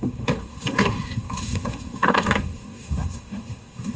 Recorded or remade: remade